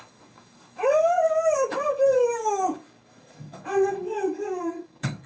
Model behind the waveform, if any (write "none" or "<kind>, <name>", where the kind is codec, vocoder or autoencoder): codec, DAC